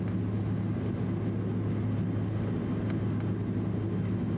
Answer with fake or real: real